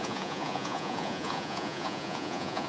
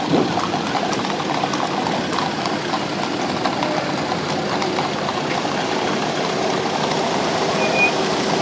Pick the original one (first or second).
second